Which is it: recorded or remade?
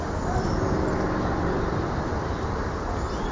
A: recorded